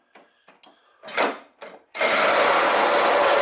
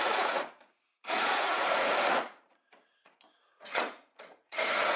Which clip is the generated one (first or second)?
second